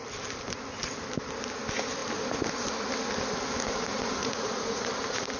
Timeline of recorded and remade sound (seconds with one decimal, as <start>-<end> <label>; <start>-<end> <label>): 0.0-4.2 recorded; 4.2-4.8 remade; 4.8-5.4 recorded